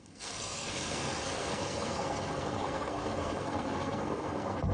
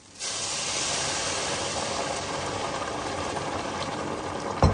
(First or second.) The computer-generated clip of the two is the first